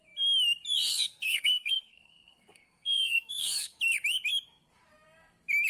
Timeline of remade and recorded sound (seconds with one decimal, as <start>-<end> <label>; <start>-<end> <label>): 0.0-0.9 recorded; 0.9-3.8 remade; 3.8-5.7 recorded

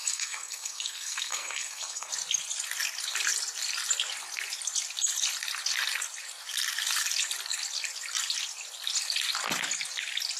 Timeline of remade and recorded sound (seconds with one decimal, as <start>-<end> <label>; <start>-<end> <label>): 0.0-2.1 remade; 2.1-10.4 recorded

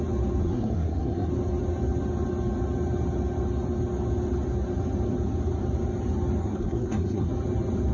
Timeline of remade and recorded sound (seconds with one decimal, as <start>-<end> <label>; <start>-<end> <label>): 0.0-0.4 recorded; 0.4-1.3 remade; 1.3-6.4 recorded; 6.4-7.3 remade; 7.3-7.9 recorded

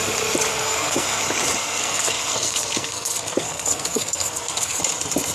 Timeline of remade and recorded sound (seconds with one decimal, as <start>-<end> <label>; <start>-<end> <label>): 0.0-0.5 recorded; 0.5-1.2 remade; 1.2-1.6 recorded; 1.6-4.8 remade; 4.8-5.3 recorded

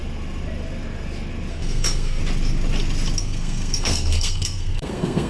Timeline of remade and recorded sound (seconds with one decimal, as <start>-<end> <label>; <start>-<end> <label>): 0.0-1.5 recorded; 1.5-2.2 remade; 2.2-3.2 recorded; 3.2-5.3 remade

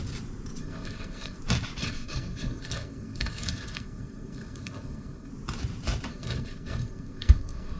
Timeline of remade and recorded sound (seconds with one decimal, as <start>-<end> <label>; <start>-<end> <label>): 0.0-0.6 recorded; 0.6-1.4 remade; 1.4-1.8 recorded; 1.8-5.3 remade; 5.3-6.1 recorded; 6.1-7.8 remade